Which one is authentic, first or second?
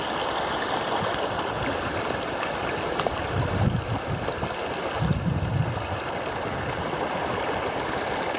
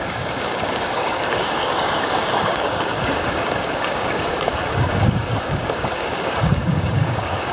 first